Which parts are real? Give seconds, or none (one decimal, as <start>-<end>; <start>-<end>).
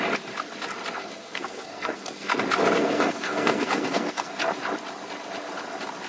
0.0-1.0; 2.4-2.8; 4.3-6.1